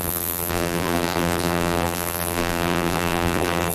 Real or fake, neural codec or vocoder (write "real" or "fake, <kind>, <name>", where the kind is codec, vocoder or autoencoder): fake, vocoder, BigVGAN v2